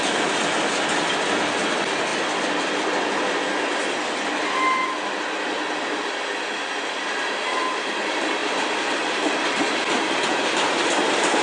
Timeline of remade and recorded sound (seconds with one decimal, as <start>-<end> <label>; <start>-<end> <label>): 0.0-8.4 recorded; 8.4-8.9 remade; 8.9-11.4 recorded